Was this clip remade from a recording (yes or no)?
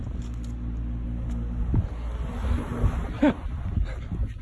no